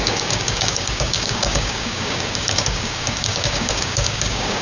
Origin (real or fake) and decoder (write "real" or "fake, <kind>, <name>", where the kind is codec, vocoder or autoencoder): fake, codec, DAC